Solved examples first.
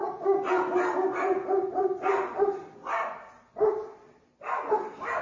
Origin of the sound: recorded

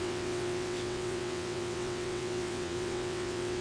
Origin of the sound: remade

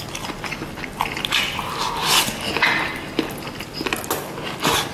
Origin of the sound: recorded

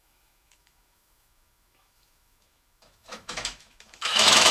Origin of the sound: remade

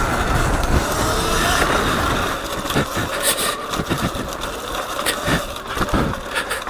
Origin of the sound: recorded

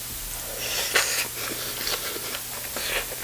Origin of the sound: recorded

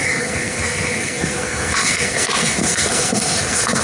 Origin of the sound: remade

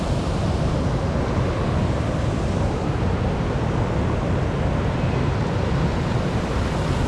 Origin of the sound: recorded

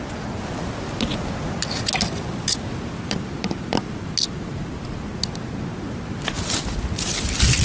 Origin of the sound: recorded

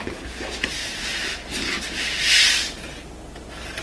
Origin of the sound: recorded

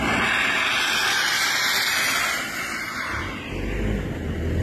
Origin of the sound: recorded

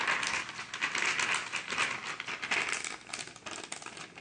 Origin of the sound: recorded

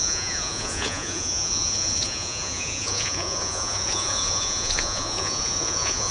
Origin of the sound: remade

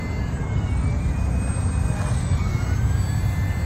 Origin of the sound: recorded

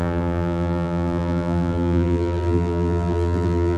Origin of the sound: remade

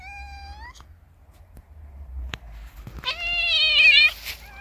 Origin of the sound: recorded